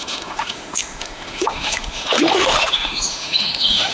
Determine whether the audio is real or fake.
fake